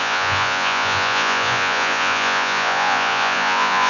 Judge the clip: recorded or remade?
remade